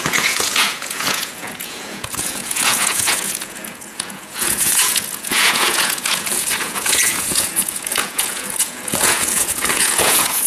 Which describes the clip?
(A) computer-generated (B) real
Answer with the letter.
A